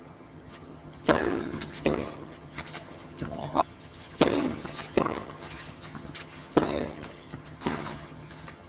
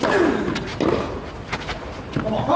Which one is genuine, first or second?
second